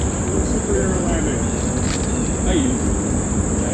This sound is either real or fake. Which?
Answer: fake